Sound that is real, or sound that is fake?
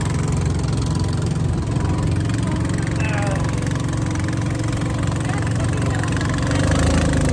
real